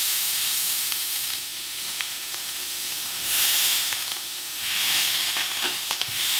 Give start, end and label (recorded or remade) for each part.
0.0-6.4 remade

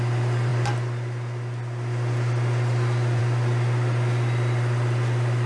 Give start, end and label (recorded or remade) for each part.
0.0-5.5 recorded

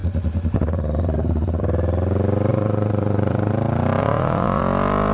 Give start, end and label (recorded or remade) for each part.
0.0-1.6 remade; 1.6-2.5 recorded; 2.5-3.5 remade; 3.5-4.0 recorded; 4.0-4.6 remade; 4.6-5.1 recorded

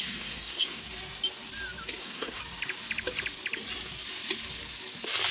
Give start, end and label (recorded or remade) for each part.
0.0-0.8 remade; 0.8-2.0 recorded; 2.0-2.4 remade; 2.4-5.3 recorded